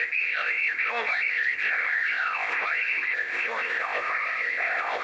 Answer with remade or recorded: remade